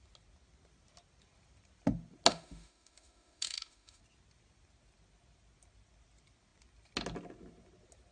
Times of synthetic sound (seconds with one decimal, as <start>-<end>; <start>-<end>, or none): 2.3-4.0

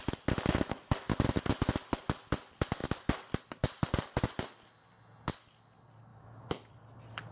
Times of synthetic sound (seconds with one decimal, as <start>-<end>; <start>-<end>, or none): 6.1-6.7

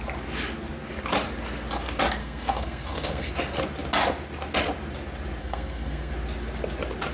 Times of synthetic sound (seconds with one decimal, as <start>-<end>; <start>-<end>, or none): 2.2-3.3; 5.4-6.1

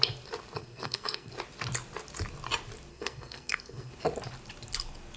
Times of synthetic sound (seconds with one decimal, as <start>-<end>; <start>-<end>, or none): 0.6-1.3; 2.9-3.9

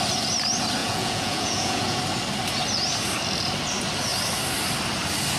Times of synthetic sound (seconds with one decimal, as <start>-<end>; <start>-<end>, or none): 0.8-2.0